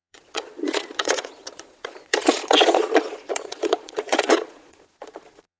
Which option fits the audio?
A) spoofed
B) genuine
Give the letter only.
A